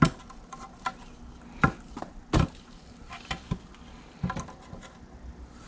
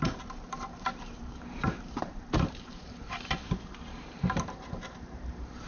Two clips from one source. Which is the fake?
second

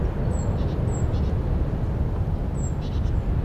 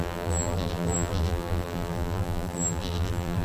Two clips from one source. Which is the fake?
second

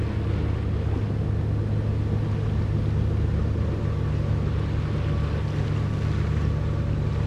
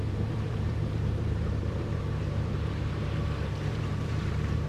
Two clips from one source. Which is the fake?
second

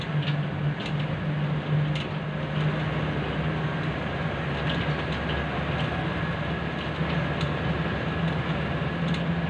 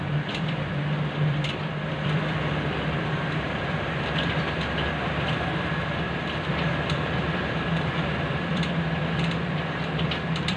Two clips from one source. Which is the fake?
second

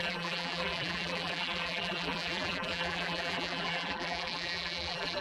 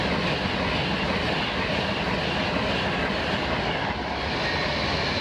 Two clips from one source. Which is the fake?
first